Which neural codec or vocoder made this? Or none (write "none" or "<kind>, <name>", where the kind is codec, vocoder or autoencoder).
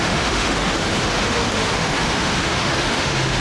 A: autoencoder, DAC-VAE